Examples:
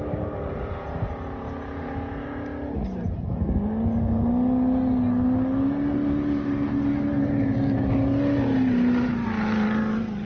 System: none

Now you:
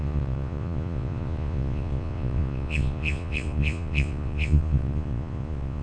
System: vocoder, Vocos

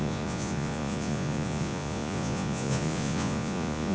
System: vocoder, Vocos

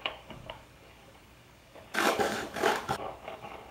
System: codec, DAC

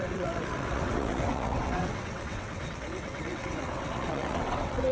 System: vocoder, WaveNeXt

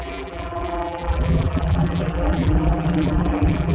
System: vocoder, BigVGAN v2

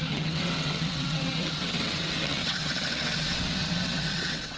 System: vocoder, WaveNeXt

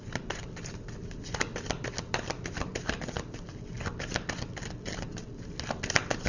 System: none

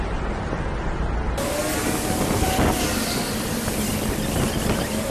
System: none